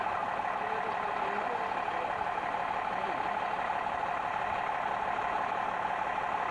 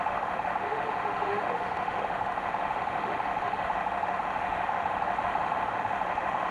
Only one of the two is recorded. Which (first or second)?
first